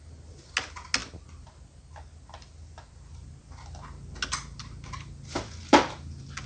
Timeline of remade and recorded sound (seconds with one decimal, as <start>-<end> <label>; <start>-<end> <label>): 0.0-6.5 recorded